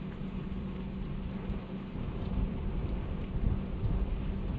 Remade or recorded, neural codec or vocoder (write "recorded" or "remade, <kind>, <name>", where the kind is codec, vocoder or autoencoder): recorded